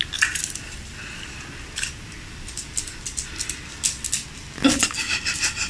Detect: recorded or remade recorded